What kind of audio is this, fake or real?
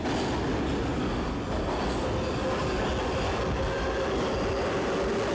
real